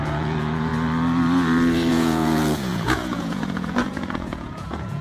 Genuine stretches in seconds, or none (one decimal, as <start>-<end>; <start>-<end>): 0.7-1.9